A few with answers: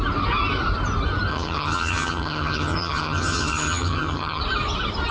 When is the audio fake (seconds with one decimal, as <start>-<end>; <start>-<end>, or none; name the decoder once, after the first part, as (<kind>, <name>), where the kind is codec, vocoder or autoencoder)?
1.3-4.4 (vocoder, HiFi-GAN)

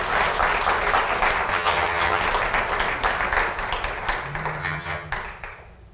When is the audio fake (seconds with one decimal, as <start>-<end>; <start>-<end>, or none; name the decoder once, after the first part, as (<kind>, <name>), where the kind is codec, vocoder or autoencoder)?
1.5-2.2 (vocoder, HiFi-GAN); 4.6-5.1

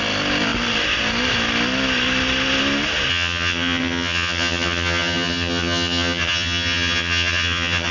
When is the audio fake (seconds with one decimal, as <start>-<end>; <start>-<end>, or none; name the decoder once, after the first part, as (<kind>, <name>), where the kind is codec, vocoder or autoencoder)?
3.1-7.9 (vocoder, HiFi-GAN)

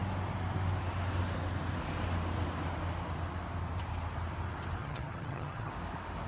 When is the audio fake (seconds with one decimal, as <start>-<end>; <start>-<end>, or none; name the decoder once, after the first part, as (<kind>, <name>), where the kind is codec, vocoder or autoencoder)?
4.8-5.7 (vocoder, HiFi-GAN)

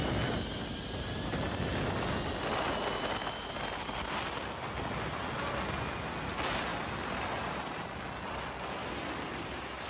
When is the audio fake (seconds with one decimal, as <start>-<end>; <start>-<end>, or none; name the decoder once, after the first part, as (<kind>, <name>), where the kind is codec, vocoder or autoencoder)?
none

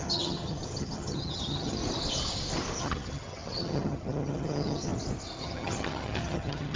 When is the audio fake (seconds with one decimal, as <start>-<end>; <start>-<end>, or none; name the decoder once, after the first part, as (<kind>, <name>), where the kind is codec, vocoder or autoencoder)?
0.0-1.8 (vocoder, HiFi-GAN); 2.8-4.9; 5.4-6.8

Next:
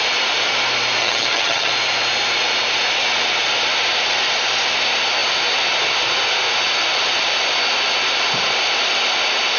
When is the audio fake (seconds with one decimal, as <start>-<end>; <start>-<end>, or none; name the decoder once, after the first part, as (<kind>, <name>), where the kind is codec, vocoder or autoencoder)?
1.0-1.7 (vocoder, HiFi-GAN)